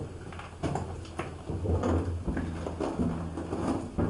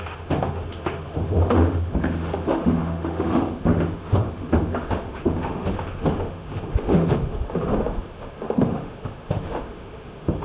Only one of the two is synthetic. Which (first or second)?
second